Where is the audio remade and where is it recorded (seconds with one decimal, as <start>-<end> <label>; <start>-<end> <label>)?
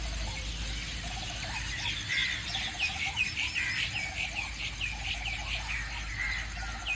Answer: 0.0-6.9 recorded